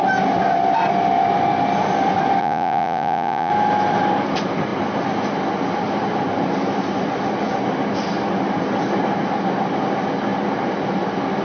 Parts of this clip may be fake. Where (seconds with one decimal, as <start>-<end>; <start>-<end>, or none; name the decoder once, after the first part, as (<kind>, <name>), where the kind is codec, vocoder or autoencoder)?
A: 2.4-3.5 (vocoder, Vocos)

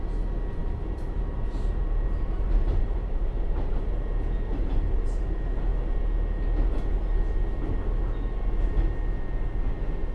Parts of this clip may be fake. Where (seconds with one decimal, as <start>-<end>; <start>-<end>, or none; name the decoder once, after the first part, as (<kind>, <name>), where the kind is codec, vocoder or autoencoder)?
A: 0.6-5.2 (vocoder, BigVGAN v2)

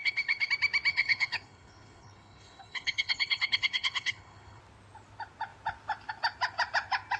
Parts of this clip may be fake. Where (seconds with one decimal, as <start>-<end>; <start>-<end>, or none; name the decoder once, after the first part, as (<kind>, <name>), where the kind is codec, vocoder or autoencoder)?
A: 0.0-0.5 (codec, HILCodec); 0.9-4.6

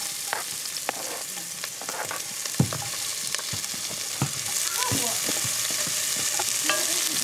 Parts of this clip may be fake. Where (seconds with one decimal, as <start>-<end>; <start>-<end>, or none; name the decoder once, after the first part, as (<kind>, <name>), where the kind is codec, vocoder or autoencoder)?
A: none

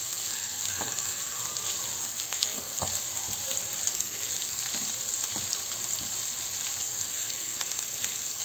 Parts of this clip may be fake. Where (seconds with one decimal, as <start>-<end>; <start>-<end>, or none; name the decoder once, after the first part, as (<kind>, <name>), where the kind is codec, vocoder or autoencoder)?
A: 0.0-1.4 (codec, SNAC); 2.0-2.9; 3.9-4.6; 6.8-8.4

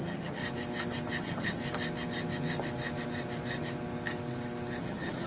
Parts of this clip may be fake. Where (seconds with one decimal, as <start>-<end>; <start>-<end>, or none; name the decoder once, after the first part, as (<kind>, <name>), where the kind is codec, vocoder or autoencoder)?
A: 0.0-0.4 (vocoder, HiFi-GAN); 1.2-1.6; 4.8-5.3

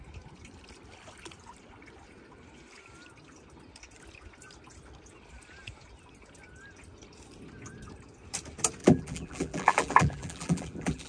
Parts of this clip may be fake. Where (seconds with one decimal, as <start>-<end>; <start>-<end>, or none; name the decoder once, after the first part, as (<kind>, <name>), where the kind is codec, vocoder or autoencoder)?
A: 8.8-11.1 (vocoder, BigVGAN v2)